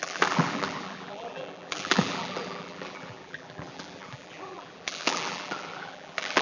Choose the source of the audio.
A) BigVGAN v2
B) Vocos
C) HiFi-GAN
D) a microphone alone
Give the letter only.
A